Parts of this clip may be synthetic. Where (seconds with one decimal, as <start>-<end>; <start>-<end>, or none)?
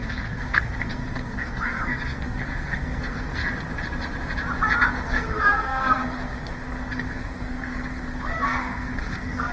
0.0-3.4; 4.9-9.5